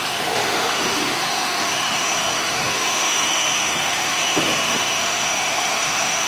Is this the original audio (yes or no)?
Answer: no